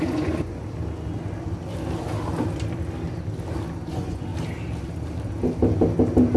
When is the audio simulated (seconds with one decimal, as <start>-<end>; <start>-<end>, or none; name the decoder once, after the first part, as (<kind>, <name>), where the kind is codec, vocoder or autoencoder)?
0.0-0.6 (vocoder, Vocos); 3.9-4.3